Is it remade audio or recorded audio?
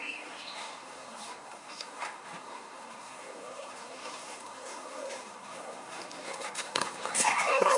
remade